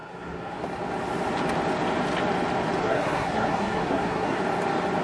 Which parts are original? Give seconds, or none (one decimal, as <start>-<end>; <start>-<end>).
0.6-2.8; 4.4-5.0